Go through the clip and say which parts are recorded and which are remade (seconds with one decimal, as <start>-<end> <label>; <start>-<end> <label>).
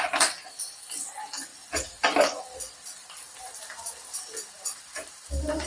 0.0-5.7 recorded